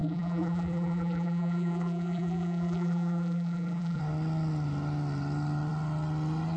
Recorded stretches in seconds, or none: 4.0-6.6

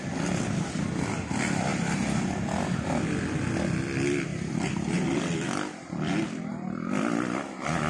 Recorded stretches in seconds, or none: 0.0-4.3; 5.2-7.9

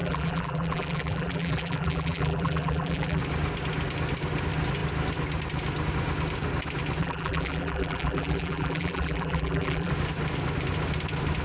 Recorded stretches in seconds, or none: 3.2-7.0; 9.9-11.4